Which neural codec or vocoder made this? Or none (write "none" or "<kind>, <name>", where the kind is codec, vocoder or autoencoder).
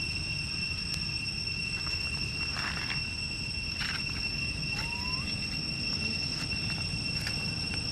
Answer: none